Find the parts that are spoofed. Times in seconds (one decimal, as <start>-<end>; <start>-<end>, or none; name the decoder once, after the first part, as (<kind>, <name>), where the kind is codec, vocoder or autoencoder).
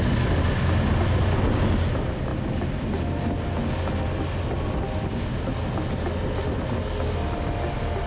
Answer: none